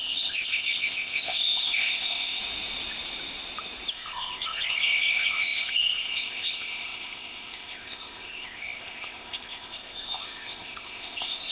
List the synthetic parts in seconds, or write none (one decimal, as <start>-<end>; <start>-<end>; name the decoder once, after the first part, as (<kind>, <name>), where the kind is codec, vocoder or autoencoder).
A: 0.0-2.4 (codec, ZipCodec); 3.9-11.5